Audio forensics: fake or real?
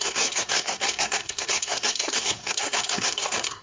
fake